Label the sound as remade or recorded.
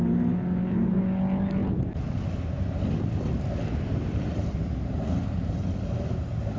recorded